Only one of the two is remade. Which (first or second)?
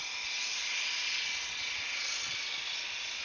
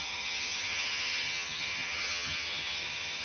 second